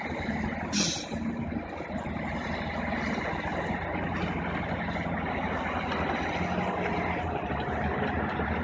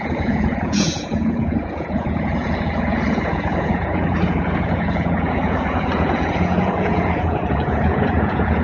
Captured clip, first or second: first